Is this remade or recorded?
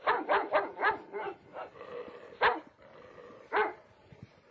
recorded